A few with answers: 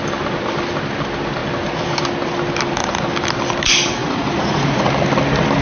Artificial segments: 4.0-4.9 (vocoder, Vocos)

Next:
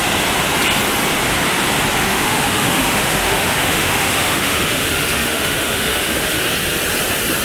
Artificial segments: 2.0-6.4 (autoencoder, DAC-VAE)

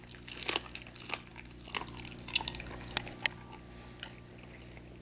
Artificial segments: none

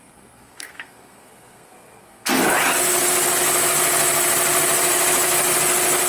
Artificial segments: 0.0-2.3 (codec, SNAC)

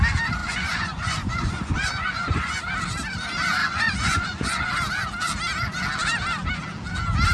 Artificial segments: 0.4-2.6 (vocoder, Vocos); 3.6-4.7

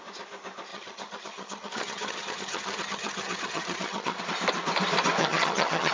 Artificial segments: 0.7-4.2 (vocoder, HiFi-GAN); 5.2-5.9

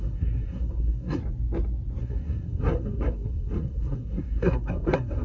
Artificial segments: 0.0-1.2 (codec, SNAC); 2.0-5.2